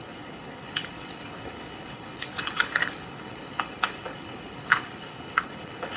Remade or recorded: remade